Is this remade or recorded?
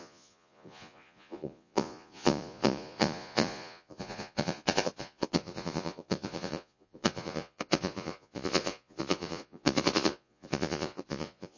remade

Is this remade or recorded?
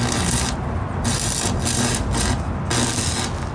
recorded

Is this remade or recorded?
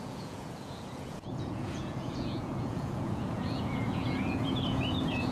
remade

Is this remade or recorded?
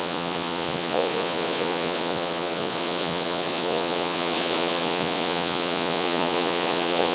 remade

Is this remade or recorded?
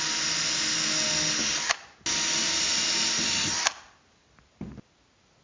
recorded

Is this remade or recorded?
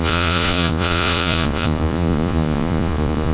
remade